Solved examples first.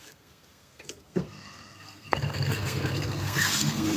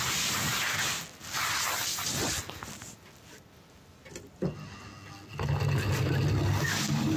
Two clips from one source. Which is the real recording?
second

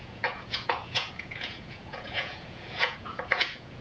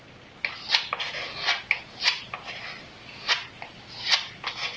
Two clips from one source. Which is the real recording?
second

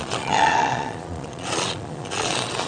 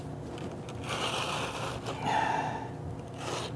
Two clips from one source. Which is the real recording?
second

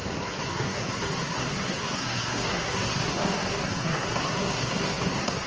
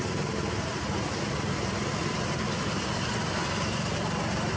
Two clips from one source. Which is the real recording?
second